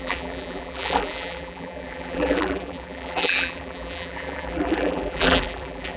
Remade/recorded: remade